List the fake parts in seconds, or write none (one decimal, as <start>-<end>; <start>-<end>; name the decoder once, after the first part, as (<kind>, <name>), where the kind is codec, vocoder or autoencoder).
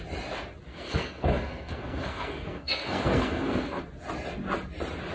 0.7-3.8 (codec, SNAC)